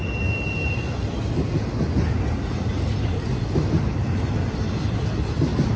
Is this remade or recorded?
recorded